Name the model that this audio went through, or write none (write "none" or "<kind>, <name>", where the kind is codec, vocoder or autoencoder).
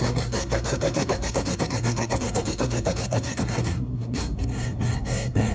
codec, SNAC